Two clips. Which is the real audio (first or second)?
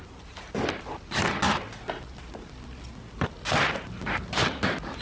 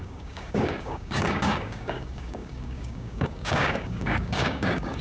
first